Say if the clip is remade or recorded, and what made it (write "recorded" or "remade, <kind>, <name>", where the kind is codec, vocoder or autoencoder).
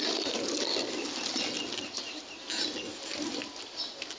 recorded